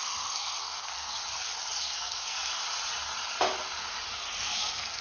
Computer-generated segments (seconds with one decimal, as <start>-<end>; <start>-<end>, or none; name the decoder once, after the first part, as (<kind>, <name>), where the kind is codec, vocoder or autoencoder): 0.0-1.2 (codec, SNAC); 1.8-2.6; 4.4-5.0